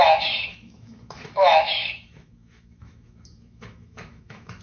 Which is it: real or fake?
fake